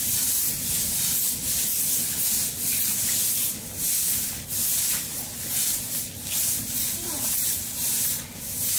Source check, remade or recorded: recorded